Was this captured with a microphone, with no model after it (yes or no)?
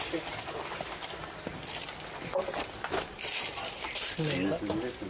yes